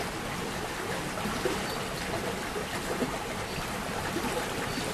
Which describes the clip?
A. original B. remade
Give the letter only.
A